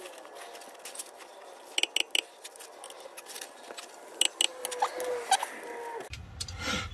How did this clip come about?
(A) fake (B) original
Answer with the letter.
B